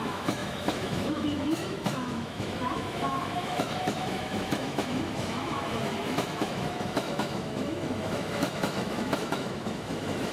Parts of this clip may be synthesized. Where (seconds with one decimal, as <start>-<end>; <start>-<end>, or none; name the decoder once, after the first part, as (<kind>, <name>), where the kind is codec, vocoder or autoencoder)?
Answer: 0.0-10.3 (autoencoder, DAC-VAE)